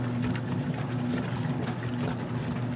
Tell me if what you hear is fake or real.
real